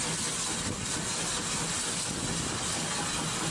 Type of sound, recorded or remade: recorded